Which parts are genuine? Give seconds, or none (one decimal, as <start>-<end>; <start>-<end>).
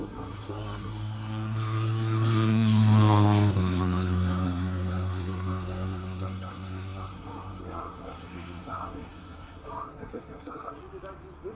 10.8-11.5